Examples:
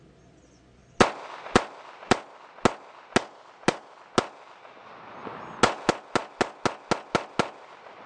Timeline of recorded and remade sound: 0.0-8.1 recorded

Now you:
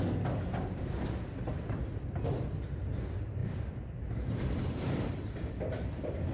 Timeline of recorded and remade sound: 0.0-6.3 recorded

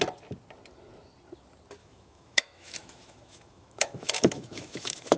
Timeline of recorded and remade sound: 0.0-1.8 recorded; 1.8-5.2 remade

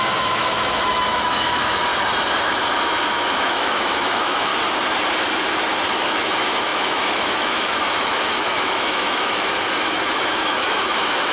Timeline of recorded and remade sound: 0.0-1.9 remade; 1.9-3.1 recorded; 3.1-4.5 remade; 4.5-6.0 recorded; 6.0-11.3 remade

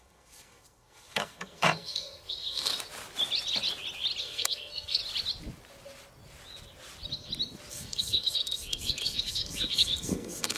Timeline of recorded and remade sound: 0.0-2.7 remade; 2.7-4.2 recorded; 4.2-5.0 remade; 5.0-7.7 recorded; 7.7-10.6 remade